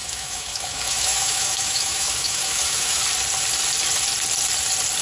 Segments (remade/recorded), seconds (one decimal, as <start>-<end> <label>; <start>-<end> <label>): 0.0-3.0 remade; 3.0-5.0 recorded